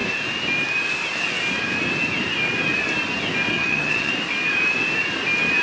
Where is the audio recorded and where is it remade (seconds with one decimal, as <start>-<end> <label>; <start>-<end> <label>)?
0.0-3.5 recorded; 3.5-4.1 remade; 4.1-5.6 recorded